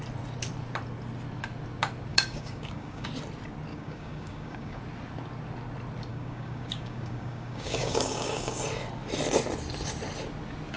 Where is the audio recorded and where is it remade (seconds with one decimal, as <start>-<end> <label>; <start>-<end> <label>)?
0.0-2.1 recorded; 2.1-3.1 remade; 3.1-3.7 recorded; 3.7-4.8 remade; 4.8-6.1 recorded; 6.1-8.6 remade; 8.6-10.8 recorded

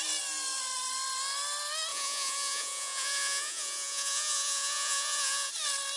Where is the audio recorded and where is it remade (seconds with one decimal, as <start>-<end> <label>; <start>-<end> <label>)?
0.0-1.9 recorded; 1.9-5.5 remade; 5.5-6.0 recorded

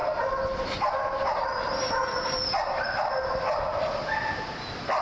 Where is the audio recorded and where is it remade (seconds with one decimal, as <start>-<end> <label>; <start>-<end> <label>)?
0.0-5.0 recorded

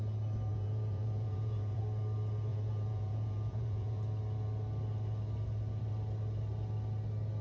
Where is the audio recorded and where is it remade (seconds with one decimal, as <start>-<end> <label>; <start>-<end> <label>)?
0.0-0.5 recorded; 0.5-1.8 remade; 1.8-2.5 recorded; 2.5-4.0 remade; 4.0-7.4 recorded

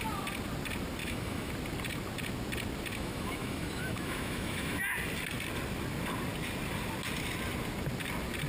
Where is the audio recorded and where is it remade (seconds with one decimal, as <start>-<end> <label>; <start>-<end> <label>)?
0.0-1.0 recorded; 1.0-1.5 remade; 1.5-2.9 recorded; 2.9-4.8 remade; 4.8-8.5 recorded